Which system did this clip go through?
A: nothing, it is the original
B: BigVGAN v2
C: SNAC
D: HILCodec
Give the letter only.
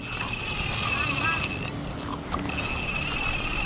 A